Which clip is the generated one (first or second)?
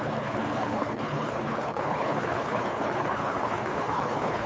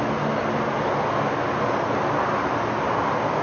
first